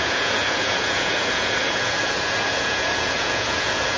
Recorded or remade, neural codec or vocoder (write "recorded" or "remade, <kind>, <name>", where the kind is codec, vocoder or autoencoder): remade, vocoder, Vocos